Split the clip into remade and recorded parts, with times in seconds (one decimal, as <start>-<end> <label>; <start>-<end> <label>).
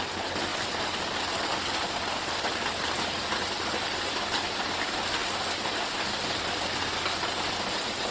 0.0-8.1 recorded